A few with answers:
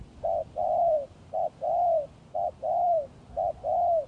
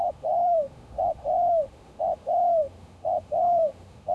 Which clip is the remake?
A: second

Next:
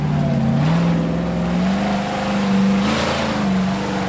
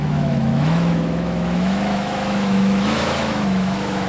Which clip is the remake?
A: second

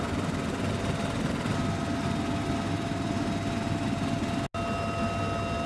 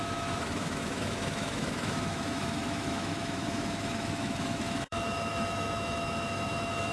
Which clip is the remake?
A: second